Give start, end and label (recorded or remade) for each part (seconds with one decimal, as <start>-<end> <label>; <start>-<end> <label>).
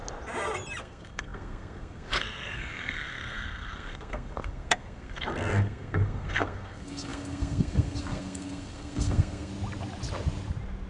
0.0-0.8 recorded; 0.8-9.5 remade; 9.5-10.9 recorded